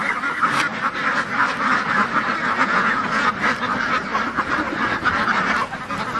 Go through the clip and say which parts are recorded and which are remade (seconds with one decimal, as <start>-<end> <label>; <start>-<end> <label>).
0.0-2.6 recorded; 2.6-3.3 remade; 3.3-6.2 recorded